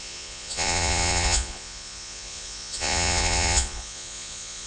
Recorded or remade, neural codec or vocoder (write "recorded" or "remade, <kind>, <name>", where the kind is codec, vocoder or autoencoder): remade, vocoder, Vocos